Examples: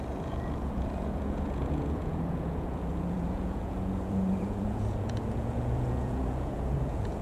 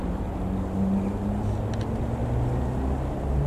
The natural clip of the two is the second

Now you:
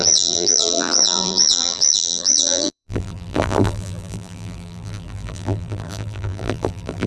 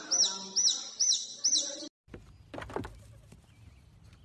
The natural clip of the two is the second